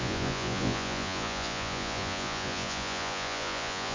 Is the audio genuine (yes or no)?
no